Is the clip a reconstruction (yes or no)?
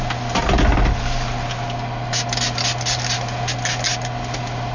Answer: no